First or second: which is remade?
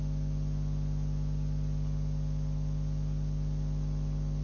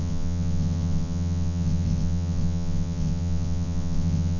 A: second